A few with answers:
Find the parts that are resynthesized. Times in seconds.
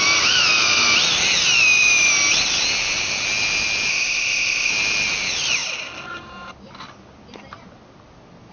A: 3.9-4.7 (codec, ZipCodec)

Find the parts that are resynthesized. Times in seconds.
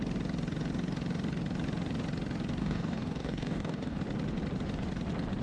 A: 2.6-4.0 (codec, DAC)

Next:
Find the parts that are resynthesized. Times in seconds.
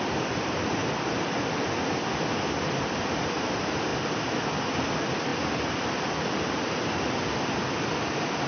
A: none